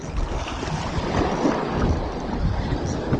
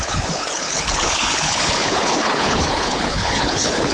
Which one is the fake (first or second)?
second